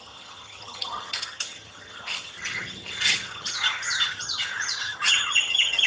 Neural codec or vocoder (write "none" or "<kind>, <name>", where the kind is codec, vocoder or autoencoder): vocoder, HiFi-GAN